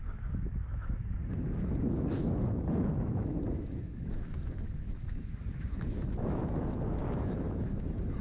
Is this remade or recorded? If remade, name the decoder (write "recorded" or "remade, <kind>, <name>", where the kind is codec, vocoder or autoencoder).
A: remade, autoencoder, DAC-VAE